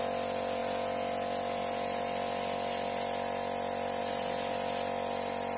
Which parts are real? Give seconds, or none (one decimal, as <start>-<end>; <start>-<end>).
0.0-5.6